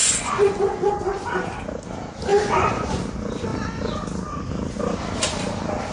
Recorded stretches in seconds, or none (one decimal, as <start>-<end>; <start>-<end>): 0.9-2.3; 3.0-5.9